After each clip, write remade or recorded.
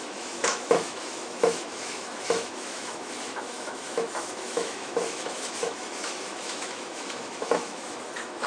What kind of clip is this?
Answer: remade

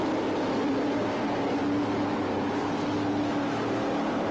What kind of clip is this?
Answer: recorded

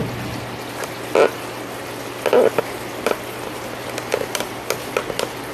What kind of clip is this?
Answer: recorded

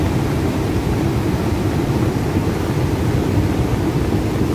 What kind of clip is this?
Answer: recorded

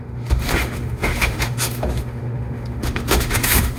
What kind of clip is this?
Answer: remade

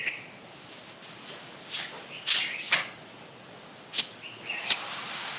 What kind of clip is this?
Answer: recorded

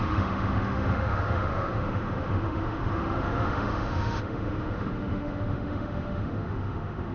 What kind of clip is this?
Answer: remade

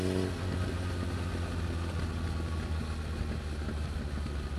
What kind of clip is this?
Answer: recorded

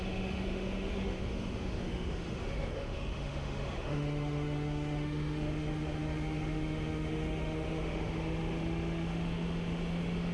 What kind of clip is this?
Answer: remade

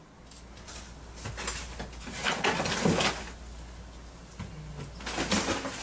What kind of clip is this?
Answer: recorded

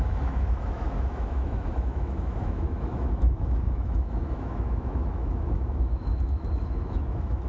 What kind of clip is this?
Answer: remade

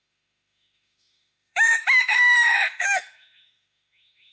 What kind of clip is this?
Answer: remade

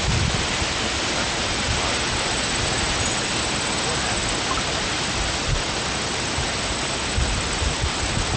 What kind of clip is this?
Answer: recorded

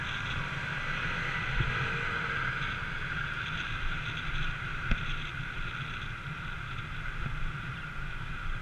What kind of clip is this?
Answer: recorded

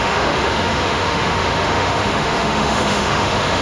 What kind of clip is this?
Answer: remade